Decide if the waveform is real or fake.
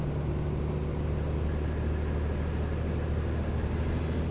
real